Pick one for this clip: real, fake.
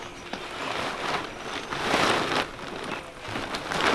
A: real